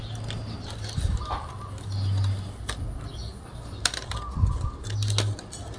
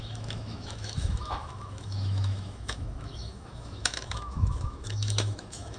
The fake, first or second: second